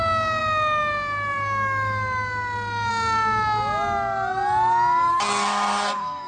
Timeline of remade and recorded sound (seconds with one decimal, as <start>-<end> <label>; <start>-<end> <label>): 0.0-5.1 recorded; 5.1-6.3 remade

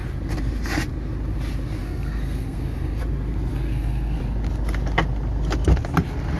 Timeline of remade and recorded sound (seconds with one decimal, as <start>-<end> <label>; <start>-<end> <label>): 0.0-1.8 recorded; 1.8-3.0 remade; 3.0-3.5 recorded; 3.5-4.2 remade; 4.2-6.4 recorded

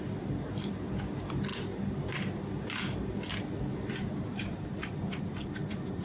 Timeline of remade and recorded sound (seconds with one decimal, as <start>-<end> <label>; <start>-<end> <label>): 0.0-6.0 recorded